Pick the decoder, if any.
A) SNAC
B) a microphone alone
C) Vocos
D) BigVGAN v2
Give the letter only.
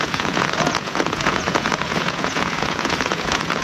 C